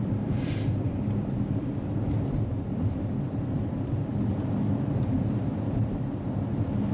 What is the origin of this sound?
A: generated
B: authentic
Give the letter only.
A